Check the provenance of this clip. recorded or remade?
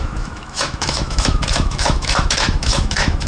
remade